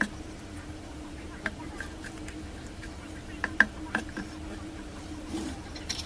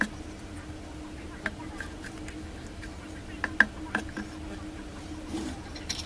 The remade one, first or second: first